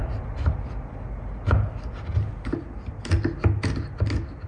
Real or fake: real